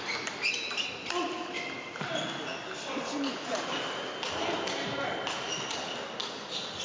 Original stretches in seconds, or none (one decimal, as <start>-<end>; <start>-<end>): 0.0-6.8